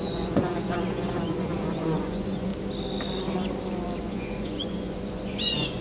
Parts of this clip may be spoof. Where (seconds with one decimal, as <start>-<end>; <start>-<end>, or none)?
0.0-2.5; 4.0-5.8